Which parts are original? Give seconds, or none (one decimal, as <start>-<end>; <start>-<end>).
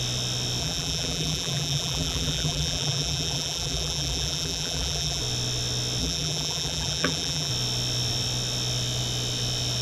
0.0-0.6; 5.2-6.0; 7.5-9.8